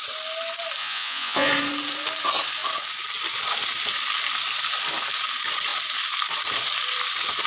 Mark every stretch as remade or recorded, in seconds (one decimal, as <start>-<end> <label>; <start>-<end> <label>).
0.0-0.8 recorded; 0.8-1.5 remade; 1.5-7.5 recorded